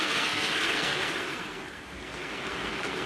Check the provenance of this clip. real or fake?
fake